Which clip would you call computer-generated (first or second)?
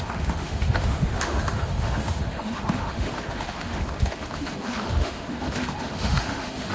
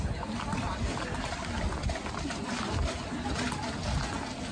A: first